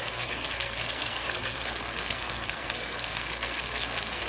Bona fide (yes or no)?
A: no